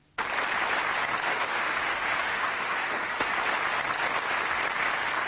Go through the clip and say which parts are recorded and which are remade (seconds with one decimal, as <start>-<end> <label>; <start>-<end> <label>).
0.0-1.3 recorded; 1.3-3.3 remade; 3.3-5.3 recorded